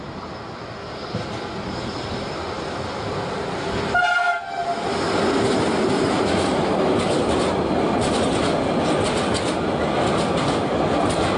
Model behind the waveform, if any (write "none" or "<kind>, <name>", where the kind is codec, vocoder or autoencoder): none